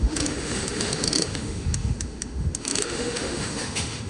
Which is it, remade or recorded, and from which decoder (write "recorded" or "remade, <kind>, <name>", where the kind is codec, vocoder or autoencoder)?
remade, autoencoder, DAC-VAE